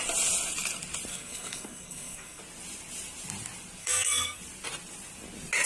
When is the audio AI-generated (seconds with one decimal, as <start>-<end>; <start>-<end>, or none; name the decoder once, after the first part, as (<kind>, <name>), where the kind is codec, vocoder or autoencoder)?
1.1-2.4 (codec, SNAC); 3.8-4.4